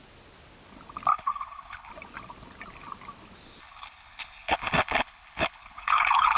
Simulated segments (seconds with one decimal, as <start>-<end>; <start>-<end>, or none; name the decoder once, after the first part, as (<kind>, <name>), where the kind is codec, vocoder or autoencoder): 1.1-1.9 (codec, HILCodec); 3.6-6.4